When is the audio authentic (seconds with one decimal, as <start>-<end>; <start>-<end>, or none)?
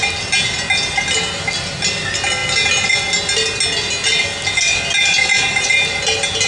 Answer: 0.0-6.5